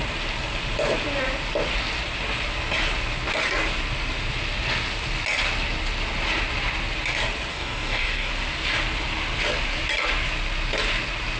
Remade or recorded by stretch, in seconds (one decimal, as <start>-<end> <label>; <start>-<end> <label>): 0.0-7.5 recorded; 7.5-8.3 remade; 8.3-11.4 recorded